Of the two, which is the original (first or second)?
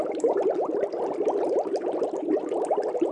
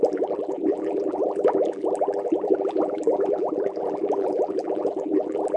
first